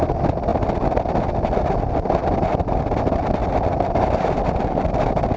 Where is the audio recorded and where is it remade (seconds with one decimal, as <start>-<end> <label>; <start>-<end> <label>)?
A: 0.0-0.5 remade; 0.5-2.6 recorded; 2.6-5.4 remade